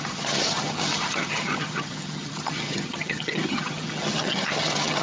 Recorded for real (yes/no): no